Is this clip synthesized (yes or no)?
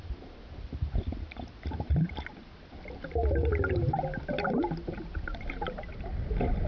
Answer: no